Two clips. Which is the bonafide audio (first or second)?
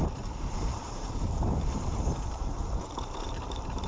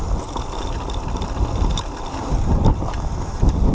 second